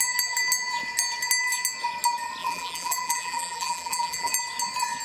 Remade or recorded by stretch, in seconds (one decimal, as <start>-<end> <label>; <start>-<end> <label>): 0.0-2.4 recorded; 2.4-4.3 remade; 4.3-5.0 recorded